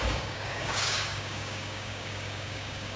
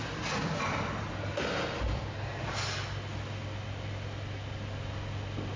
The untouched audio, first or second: second